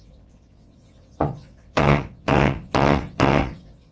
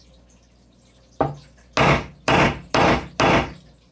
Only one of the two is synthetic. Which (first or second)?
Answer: first